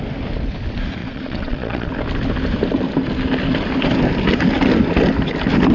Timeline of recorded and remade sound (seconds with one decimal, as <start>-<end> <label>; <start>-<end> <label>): 0.0-1.0 recorded; 1.0-1.9 remade; 1.9-5.7 recorded

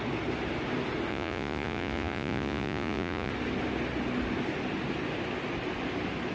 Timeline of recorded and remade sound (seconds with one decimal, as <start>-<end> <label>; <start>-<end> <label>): 0.0-1.1 recorded; 1.1-3.3 remade; 3.3-6.3 recorded

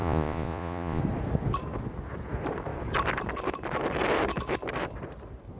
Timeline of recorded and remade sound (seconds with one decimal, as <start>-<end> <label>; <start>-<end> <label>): 0.0-1.0 remade; 1.0-5.6 recorded

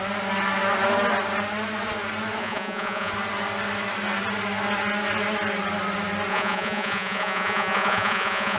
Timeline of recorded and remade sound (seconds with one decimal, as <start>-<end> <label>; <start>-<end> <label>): 0.0-2.4 recorded; 2.4-3.1 remade; 3.1-6.3 recorded; 6.3-8.6 remade

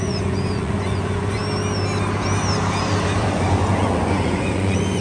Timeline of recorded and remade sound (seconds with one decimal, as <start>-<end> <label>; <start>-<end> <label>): 0.0-1.4 remade; 1.4-3.2 recorded; 3.2-5.0 remade

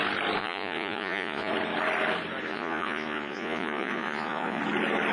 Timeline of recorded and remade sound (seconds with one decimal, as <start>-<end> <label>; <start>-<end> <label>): 0.0-0.4 recorded; 0.4-1.5 remade; 1.5-2.5 recorded; 2.5-4.6 remade; 4.6-5.1 recorded

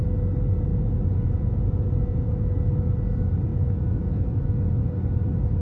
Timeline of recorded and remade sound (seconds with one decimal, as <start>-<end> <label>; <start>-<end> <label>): 0.0-0.7 recorded; 0.7-2.3 remade; 2.3-3.5 recorded; 3.5-4.8 remade; 4.8-5.6 recorded

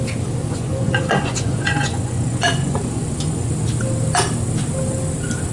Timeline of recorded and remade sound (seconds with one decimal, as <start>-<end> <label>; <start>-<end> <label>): 0.0-0.4 recorded; 0.4-3.5 remade; 3.5-5.5 recorded